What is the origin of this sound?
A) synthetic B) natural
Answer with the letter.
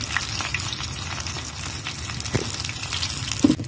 B